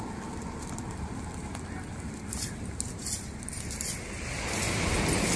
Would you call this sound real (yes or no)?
yes